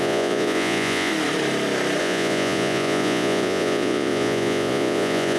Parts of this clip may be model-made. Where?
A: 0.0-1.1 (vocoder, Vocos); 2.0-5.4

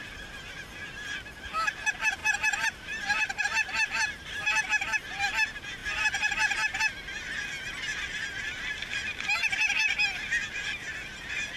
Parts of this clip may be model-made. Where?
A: 2.2-4.6 (vocoder, BigVGAN v2); 5.8-6.8

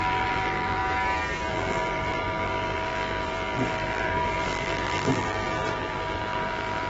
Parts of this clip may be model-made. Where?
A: 0.0-0.8 (vocoder, BigVGAN v2); 1.5-6.9

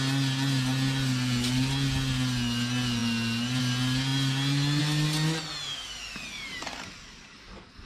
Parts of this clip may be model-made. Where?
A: none

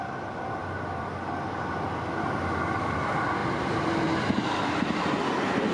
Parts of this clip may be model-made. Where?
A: 0.6-1.3 (vocoder, BigVGAN v2); 3.4-3.9